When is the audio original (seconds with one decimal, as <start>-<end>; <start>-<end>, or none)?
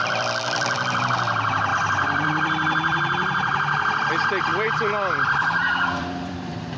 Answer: 1.0-1.7; 4.1-4.5